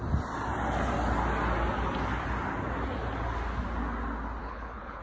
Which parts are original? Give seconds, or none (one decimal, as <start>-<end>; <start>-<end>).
0.0-4.4